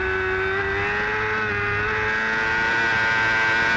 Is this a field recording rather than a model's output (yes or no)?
yes